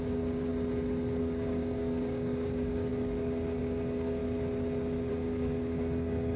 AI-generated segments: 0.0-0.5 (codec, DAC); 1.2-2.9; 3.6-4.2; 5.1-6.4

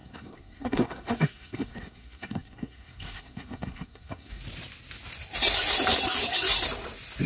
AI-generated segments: 0.0-4.4 (codec, SNAC)

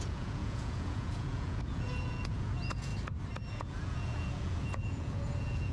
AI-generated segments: 0.0-2.9 (vocoder, Vocos); 3.5-5.7

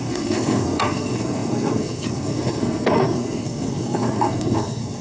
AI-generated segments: 0.0-5.0 (codec, SNAC)

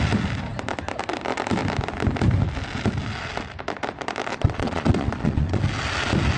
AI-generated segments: 4.3-5.6 (vocoder, Vocos)

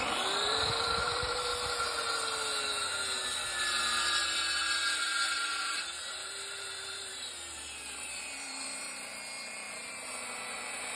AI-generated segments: 0.0-1.5 (vocoder, BigVGAN v2); 3.6-9.1; 9.7-11.0

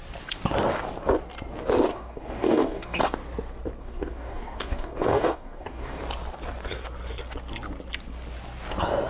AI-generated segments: 1.9-3.0 (codec, DAC); 3.8-6.0

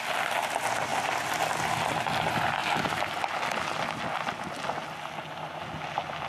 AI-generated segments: none